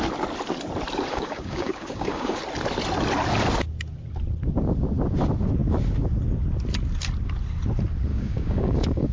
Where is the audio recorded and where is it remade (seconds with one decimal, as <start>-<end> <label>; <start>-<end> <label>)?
0.0-1.1 recorded; 1.1-2.4 remade; 2.4-8.1 recorded; 8.1-9.1 remade